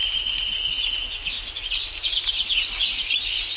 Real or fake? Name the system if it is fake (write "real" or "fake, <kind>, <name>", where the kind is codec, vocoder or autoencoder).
real